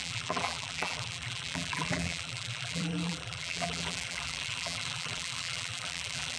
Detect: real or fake fake